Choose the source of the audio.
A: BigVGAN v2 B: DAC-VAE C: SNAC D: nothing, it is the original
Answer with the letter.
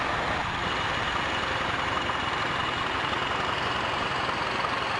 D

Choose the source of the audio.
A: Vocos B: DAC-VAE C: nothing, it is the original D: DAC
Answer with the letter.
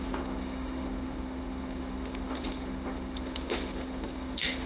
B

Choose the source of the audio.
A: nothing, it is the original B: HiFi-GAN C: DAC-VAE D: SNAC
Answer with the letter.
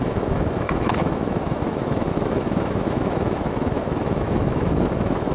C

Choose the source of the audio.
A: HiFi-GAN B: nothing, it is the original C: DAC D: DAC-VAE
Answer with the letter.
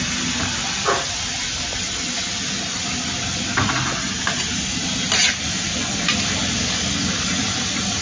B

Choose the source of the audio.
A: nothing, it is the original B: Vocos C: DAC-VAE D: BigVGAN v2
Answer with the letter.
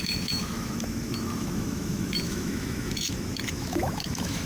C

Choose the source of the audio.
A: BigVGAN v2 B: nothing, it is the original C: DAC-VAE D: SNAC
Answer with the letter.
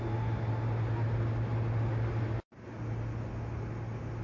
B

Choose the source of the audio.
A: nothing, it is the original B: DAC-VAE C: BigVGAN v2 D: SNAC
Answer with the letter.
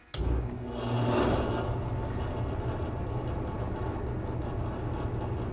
A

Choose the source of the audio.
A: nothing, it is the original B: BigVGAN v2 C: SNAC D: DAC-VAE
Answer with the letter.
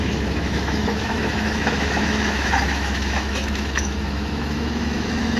D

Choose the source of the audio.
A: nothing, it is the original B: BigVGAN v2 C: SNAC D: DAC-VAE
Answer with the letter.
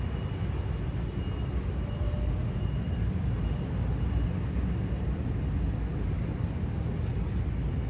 A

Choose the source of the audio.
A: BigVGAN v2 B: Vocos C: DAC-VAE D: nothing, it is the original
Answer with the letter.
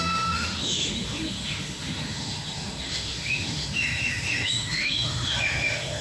C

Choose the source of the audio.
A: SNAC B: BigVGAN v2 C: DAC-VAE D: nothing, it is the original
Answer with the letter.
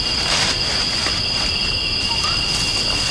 D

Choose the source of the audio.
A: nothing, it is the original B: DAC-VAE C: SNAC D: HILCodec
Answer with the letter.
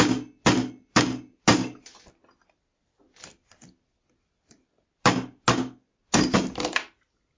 A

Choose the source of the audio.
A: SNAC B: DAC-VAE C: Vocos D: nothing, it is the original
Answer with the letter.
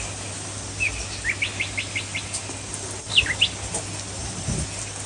D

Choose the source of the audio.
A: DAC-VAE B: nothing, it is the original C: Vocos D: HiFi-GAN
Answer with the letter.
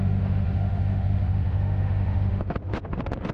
A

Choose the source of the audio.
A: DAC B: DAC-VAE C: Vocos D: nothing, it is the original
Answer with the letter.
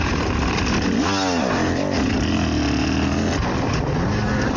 D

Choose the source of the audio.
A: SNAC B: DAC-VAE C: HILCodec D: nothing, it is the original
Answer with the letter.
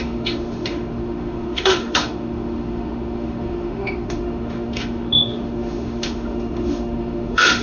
B